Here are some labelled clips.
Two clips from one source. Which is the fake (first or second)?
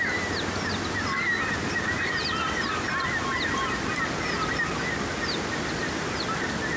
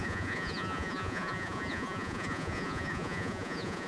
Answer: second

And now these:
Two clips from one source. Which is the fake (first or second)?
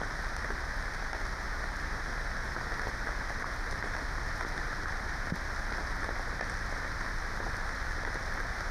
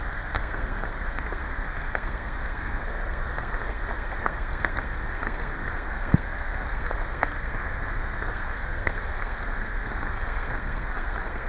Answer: second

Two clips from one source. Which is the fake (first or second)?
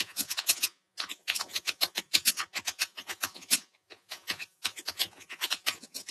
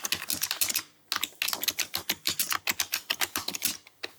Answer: first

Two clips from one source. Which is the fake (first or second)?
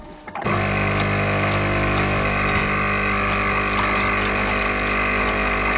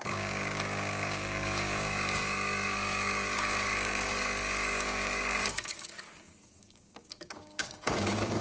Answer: second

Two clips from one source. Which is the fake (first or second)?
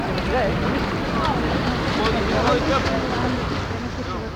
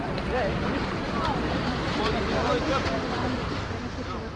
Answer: second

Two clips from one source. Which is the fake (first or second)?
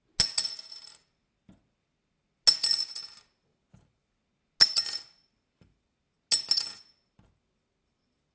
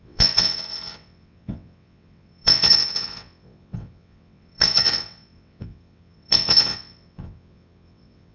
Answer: second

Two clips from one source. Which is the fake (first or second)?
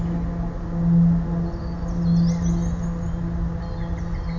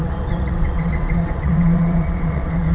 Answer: second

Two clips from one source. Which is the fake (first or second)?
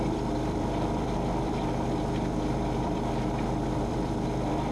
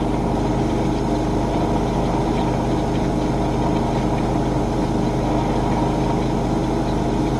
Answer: first